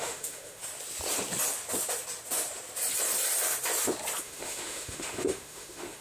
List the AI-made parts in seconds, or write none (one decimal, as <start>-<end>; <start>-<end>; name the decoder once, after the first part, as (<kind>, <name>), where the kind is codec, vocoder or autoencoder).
0.0-0.6 (autoencoder, DAC-VAE); 4.2-6.0